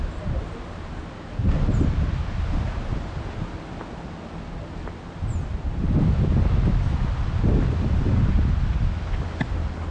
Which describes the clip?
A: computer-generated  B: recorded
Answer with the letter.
B